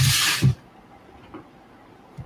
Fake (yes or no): yes